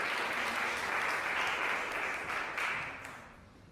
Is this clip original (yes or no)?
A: yes